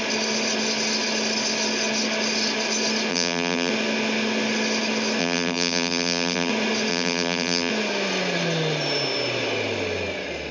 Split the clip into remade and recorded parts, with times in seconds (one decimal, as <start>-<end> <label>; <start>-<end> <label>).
0.0-3.1 recorded; 3.1-3.7 remade; 3.7-5.2 recorded; 5.2-6.5 remade; 6.5-6.9 recorded; 6.9-7.7 remade; 7.7-10.5 recorded